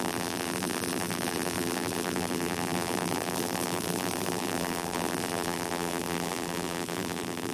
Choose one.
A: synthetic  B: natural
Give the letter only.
A